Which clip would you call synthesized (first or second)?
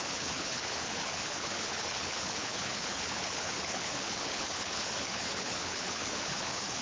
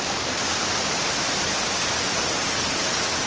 first